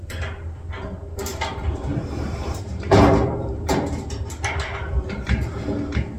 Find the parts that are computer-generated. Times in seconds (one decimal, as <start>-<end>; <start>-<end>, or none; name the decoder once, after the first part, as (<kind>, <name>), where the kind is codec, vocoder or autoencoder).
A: 1.3-4.3 (vocoder, BigVGAN v2)